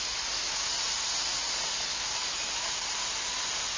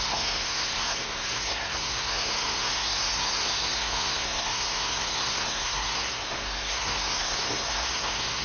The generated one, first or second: second